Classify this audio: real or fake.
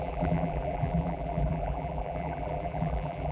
fake